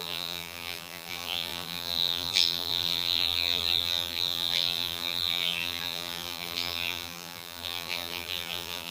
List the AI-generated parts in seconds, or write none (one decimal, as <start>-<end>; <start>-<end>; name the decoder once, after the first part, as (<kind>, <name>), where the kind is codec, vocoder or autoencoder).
0.0-8.9 (vocoder, BigVGAN v2)

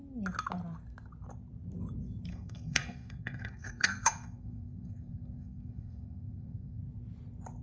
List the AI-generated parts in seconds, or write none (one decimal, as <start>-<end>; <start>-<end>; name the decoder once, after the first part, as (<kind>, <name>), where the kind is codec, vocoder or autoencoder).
2.3-6.8 (codec, SNAC)

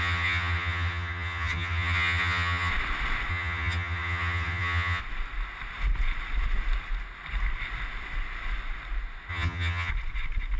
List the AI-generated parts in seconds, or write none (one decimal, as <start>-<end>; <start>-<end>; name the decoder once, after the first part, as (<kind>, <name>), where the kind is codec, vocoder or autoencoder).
0.0-2.7 (vocoder, HiFi-GAN); 3.3-5.0; 9.3-9.9